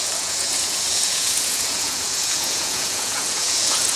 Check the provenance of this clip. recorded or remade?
remade